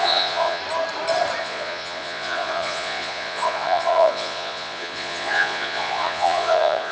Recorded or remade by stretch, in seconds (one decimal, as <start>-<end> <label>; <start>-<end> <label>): 0.0-0.6 remade; 0.6-1.4 recorded; 1.4-6.9 remade